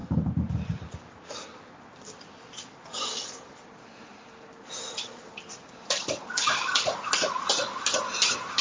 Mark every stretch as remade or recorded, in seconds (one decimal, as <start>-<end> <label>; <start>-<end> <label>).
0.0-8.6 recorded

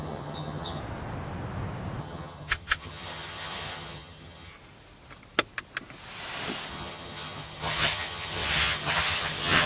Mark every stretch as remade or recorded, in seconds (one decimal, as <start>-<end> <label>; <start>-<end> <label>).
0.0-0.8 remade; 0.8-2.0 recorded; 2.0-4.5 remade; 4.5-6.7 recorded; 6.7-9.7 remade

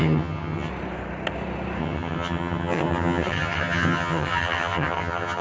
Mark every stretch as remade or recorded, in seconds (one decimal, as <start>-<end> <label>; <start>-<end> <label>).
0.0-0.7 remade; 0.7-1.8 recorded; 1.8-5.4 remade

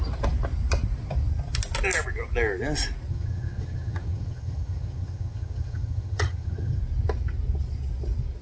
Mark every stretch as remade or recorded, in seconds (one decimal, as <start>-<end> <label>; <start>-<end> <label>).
0.0-3.1 recorded; 3.1-6.8 remade; 6.8-8.4 recorded

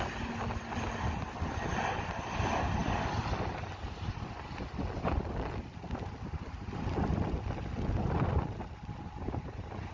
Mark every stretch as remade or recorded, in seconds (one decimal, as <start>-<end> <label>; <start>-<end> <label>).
0.0-9.9 recorded

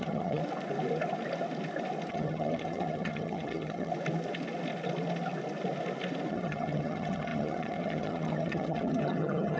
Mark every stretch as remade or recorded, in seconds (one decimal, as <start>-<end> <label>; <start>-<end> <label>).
0.0-0.4 remade; 0.4-2.1 recorded; 2.1-3.9 remade; 3.9-6.3 recorded; 6.3-9.6 remade

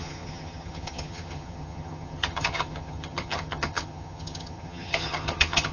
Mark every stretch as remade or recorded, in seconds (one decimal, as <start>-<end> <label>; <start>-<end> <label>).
0.0-5.7 remade

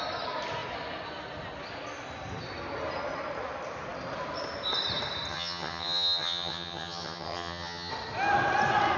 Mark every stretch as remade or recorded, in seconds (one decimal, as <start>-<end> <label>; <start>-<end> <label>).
0.0-5.3 recorded; 5.3-7.9 remade; 7.9-9.0 recorded